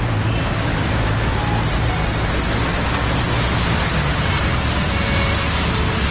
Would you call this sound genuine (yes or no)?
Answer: yes